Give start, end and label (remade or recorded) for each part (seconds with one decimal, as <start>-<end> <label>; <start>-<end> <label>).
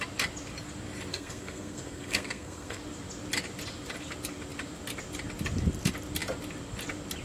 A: 0.0-1.1 recorded; 1.1-2.8 remade; 2.8-7.2 recorded